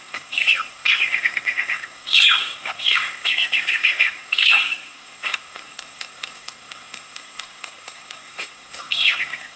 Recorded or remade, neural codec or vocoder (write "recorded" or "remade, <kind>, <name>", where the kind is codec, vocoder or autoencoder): remade, codec, SNAC